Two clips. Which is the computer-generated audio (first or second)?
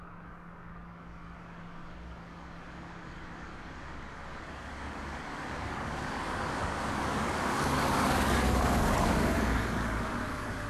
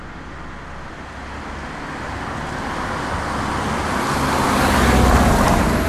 first